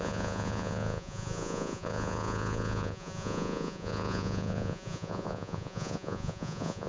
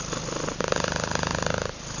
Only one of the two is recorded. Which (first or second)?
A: second